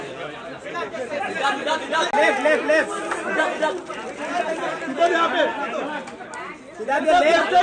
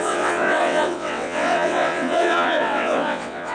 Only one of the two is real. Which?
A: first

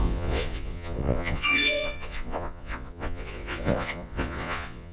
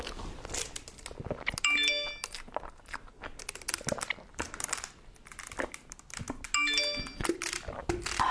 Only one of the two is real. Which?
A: second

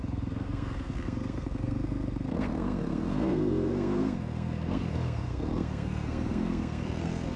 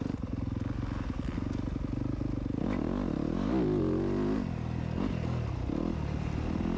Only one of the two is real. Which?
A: second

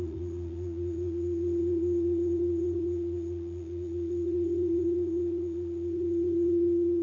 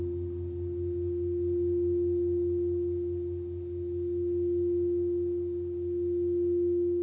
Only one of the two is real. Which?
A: second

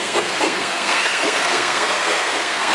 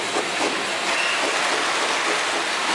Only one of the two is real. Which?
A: second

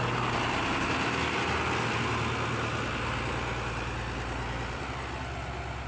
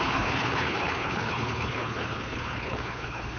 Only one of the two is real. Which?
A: first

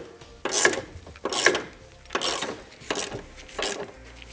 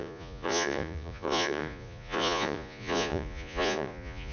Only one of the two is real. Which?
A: first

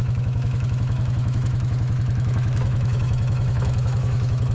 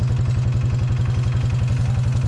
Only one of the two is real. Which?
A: second